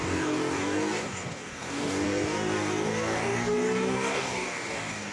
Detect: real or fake fake